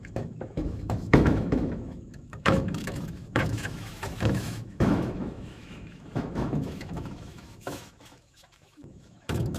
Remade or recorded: remade